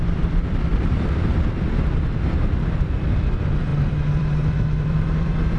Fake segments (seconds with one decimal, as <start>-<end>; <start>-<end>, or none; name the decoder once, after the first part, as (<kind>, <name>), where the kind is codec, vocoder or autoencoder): 0.0-5.6 (vocoder, BigVGAN v2)